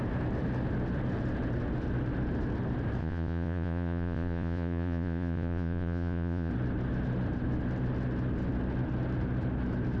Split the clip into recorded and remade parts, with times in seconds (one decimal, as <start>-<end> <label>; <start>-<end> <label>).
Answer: 0.0-3.0 recorded; 3.0-6.5 remade; 6.5-10.0 recorded